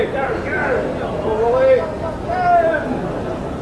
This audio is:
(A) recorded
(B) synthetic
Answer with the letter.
A